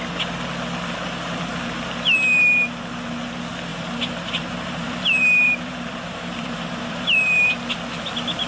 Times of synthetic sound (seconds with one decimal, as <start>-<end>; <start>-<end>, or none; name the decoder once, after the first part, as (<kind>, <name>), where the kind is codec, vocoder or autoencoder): 3.7-7.5 (vocoder, BigVGAN v2)